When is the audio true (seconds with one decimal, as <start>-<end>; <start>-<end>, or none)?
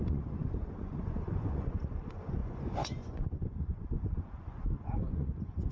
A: none